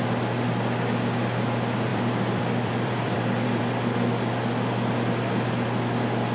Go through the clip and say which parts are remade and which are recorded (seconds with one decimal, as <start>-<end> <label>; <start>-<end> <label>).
0.0-1.9 recorded; 1.9-3.6 remade; 3.6-6.3 recorded